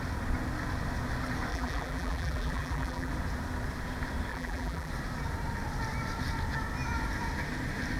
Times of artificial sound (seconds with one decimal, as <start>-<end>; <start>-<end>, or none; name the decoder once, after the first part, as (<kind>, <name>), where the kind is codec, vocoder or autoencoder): 1.5-3.1 (vocoder, BigVGAN v2); 4.3-4.9